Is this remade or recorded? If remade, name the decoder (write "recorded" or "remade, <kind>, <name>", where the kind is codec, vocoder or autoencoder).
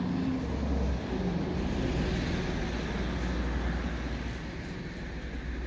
recorded